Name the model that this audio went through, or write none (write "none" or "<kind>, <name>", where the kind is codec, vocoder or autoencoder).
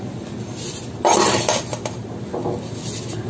none